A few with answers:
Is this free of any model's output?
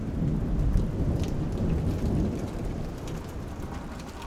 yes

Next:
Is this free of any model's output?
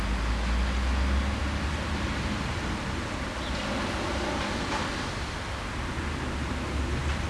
yes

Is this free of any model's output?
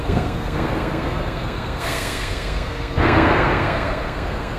no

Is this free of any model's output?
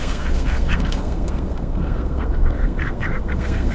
no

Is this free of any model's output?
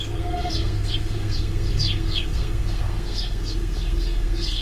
no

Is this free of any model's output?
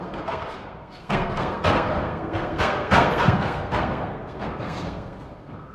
no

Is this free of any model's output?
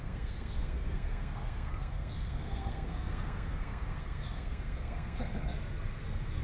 no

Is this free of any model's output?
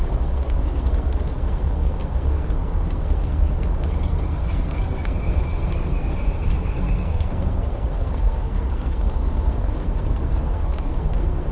no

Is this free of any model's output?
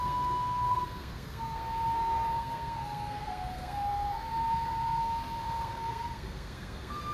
no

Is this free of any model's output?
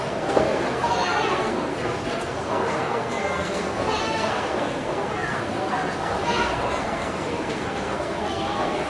no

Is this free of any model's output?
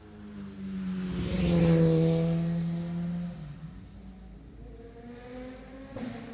yes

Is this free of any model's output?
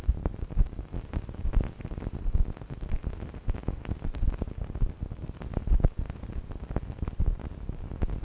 yes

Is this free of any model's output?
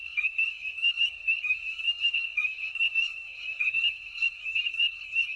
no